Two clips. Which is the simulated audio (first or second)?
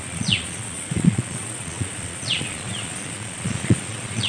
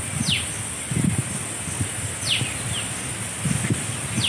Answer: first